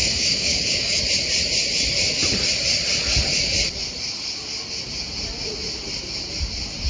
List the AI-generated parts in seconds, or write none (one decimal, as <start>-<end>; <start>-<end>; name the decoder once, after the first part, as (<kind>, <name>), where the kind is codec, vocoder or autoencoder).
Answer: 0.0-1.0 (codec, DAC)